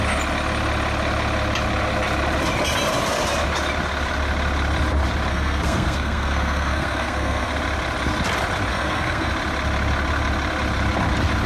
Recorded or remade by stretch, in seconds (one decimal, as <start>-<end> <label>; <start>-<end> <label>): 0.0-5.3 recorded; 5.3-7.5 remade; 7.5-8.7 recorded; 8.7-9.3 remade; 9.3-11.5 recorded